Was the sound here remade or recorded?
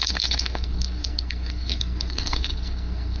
remade